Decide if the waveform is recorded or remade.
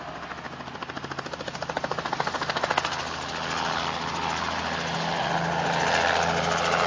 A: recorded